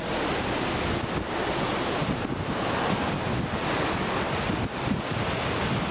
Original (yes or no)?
yes